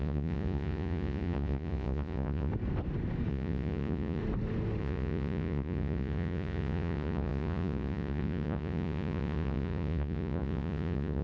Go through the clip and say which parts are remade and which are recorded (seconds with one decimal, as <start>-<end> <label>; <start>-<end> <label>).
0.0-2.5 remade; 2.5-3.3 recorded; 3.3-4.2 remade; 4.2-4.8 recorded; 4.8-11.2 remade